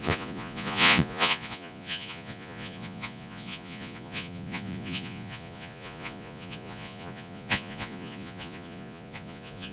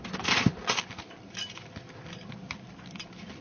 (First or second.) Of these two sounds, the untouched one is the second